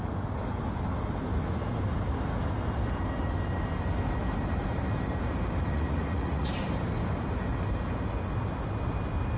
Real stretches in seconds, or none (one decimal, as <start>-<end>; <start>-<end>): 0.0-5.7; 6.5-9.4